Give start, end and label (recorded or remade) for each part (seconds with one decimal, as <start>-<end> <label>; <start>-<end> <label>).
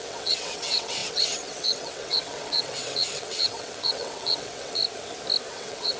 0.0-4.8 remade; 4.8-5.5 recorded; 5.5-6.0 remade